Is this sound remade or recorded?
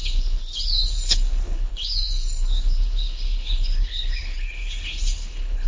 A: remade